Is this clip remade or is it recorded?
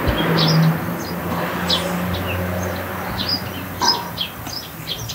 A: recorded